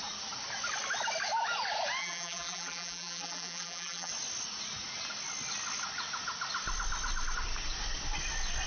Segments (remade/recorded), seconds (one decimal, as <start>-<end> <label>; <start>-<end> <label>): 0.0-2.0 recorded; 2.0-4.1 remade; 4.1-8.7 recorded